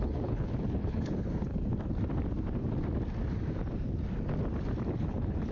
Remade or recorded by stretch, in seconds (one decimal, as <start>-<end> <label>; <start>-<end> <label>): 0.0-1.5 remade; 1.5-4.8 recorded; 4.8-5.5 remade